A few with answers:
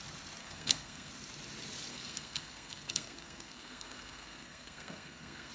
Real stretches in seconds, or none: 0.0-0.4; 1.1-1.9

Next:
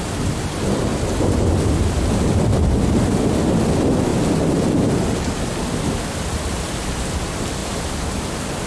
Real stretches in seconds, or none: 0.0-8.7

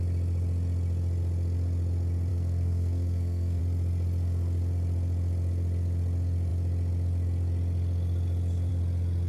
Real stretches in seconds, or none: 0.0-2.3; 3.6-9.3

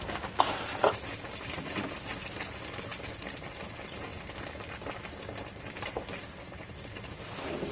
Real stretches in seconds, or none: 0.0-7.7

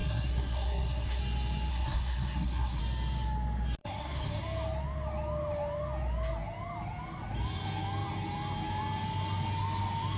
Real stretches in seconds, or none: 1.2-1.7; 2.8-3.8; 4.4-10.2